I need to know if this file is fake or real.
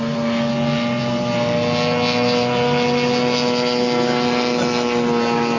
real